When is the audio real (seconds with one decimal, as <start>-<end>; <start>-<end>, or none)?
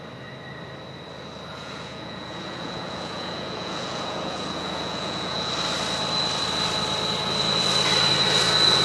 0.0-1.5; 5.5-8.8